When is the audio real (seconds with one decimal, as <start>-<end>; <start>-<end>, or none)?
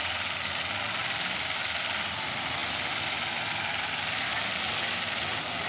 0.0-5.7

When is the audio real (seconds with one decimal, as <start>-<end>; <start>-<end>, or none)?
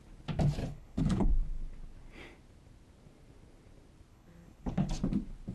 0.0-0.6; 1.3-4.1; 4.9-5.5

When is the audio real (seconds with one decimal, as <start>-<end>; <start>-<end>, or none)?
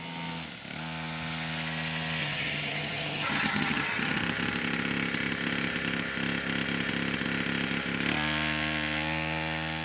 0.0-2.2; 4.2-9.8